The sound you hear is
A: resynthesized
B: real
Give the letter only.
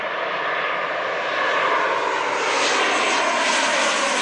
B